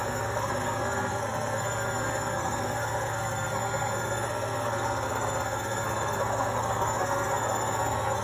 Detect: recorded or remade remade